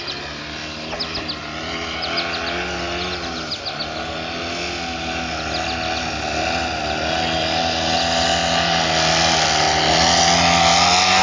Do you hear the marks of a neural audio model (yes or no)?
no